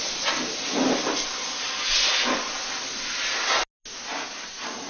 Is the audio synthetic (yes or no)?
no